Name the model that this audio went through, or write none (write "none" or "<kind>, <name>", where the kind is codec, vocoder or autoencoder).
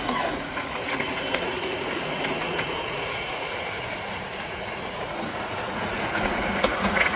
vocoder, Vocos